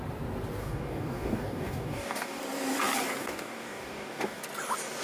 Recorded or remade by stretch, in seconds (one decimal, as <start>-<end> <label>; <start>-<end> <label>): 0.0-0.6 recorded; 0.6-2.4 remade; 2.4-3.2 recorded; 3.2-4.4 remade; 4.4-5.0 recorded